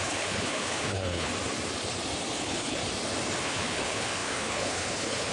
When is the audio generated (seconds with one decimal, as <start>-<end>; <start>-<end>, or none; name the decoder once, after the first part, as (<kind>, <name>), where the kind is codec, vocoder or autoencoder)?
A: 0.0-1.3 (codec, HILCodec); 2.4-2.8; 3.4-5.3